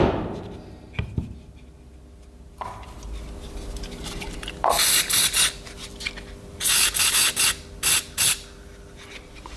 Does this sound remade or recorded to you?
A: recorded